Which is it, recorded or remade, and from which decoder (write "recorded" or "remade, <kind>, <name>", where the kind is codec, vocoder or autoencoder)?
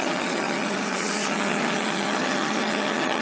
remade, vocoder, HiFi-GAN